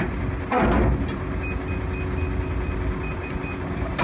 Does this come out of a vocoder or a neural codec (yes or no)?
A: no